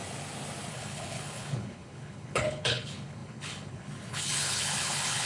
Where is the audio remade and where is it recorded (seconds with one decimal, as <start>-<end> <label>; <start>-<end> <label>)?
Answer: 0.0-0.7 recorded; 0.7-5.3 remade